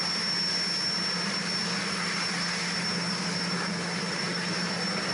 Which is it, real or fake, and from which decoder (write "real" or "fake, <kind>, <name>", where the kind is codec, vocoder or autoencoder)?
real